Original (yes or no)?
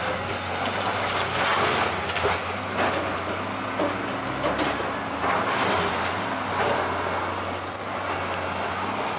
yes